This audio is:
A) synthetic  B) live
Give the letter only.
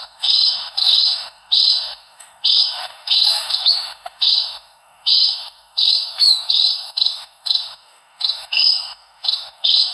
A